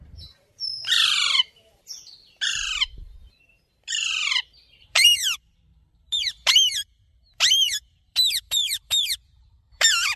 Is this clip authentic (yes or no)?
no